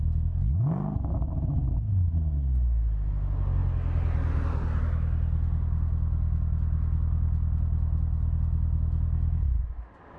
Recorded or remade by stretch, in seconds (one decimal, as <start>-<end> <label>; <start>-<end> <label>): 0.0-10.2 recorded